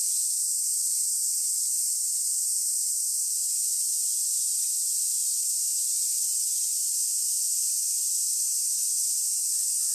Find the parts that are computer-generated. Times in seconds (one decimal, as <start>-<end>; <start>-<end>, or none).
none